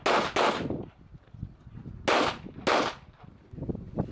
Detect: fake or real real